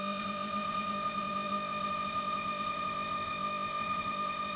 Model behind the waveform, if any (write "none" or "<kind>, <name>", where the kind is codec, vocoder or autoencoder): codec, ZipCodec